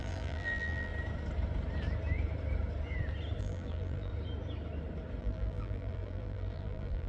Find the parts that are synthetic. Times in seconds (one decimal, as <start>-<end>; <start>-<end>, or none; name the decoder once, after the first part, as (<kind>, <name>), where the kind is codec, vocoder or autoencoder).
0.0-0.9 (vocoder, BigVGAN v2); 3.4-4.1; 5.2-7.1